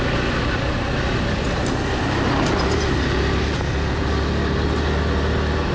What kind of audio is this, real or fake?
real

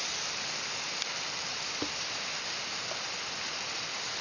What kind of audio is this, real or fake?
real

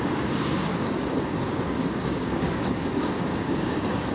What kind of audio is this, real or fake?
fake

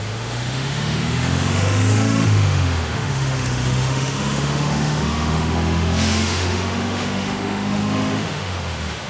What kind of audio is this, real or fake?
fake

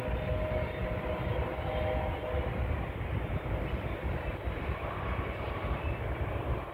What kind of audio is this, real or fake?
real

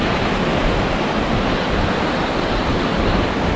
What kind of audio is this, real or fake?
real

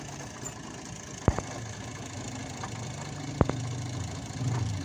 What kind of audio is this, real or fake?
real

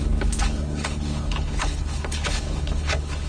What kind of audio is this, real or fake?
fake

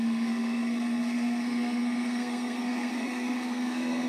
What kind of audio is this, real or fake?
fake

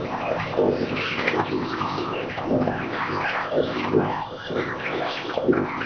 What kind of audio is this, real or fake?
fake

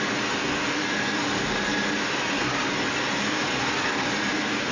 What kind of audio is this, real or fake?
real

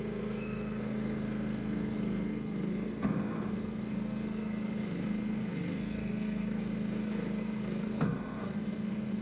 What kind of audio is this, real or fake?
fake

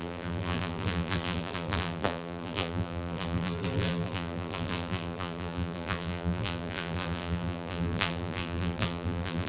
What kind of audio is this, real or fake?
fake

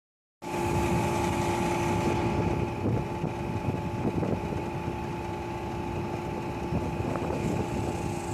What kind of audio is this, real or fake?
real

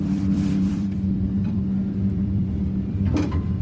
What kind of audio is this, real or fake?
fake